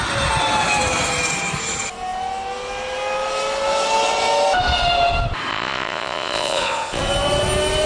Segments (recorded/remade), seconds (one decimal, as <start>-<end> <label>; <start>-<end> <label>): 0.0-5.5 recorded; 5.5-7.0 remade; 7.0-7.9 recorded